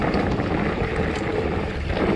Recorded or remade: recorded